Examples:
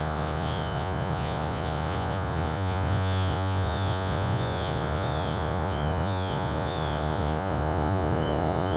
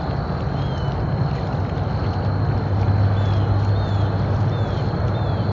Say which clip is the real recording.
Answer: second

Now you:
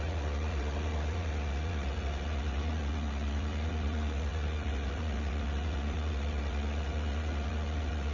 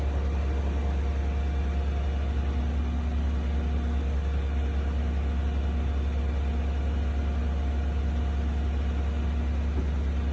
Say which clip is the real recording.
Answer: second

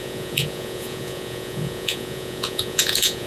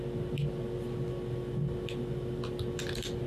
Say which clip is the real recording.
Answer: second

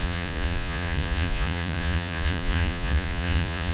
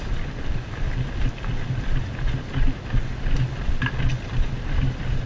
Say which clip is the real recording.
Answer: second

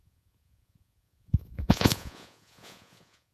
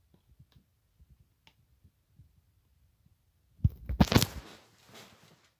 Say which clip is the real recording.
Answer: second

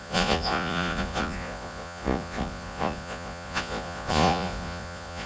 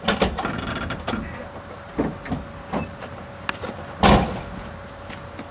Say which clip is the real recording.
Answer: second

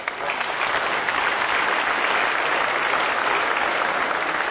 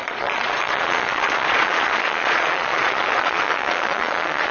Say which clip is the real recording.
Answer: first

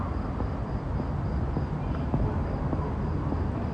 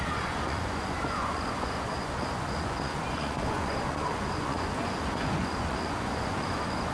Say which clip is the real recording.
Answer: first